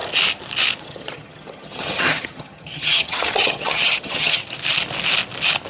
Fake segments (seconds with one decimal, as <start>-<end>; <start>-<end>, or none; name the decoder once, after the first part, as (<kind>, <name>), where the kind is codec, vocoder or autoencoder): 0.8-4.4 (vocoder, HiFi-GAN)